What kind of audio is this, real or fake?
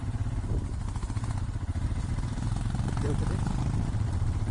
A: fake